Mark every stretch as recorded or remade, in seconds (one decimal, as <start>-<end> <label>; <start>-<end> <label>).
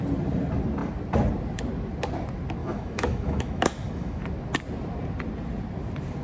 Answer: 0.0-2.6 recorded; 2.6-4.2 remade; 4.2-6.2 recorded